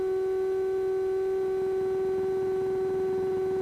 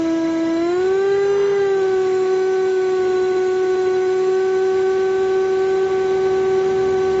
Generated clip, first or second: second